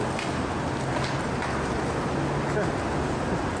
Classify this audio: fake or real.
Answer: real